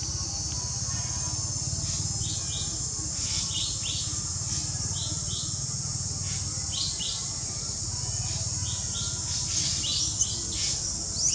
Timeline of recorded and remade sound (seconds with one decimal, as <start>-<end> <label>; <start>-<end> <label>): 0.0-11.3 recorded